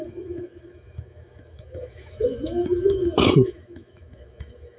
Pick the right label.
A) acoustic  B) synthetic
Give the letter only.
B